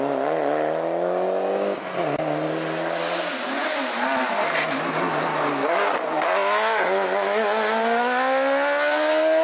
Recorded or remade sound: recorded